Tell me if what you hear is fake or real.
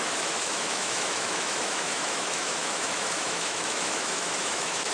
fake